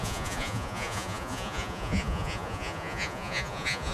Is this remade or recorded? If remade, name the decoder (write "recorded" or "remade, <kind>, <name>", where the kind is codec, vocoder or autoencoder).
remade, vocoder, Vocos